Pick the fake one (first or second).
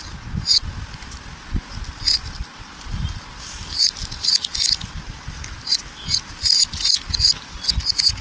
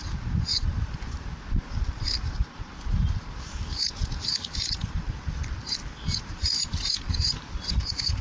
second